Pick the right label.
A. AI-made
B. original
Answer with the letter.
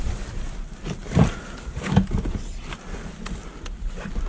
B